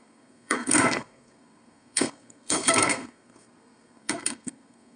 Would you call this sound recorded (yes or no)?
no